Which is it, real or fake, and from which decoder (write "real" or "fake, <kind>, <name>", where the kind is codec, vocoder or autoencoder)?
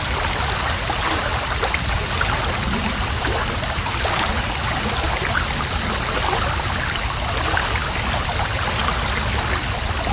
real